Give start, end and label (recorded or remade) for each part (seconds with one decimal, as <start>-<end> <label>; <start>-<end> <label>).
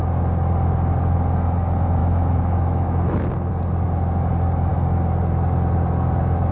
0.0-2.0 recorded; 2.0-3.5 remade; 3.5-6.5 recorded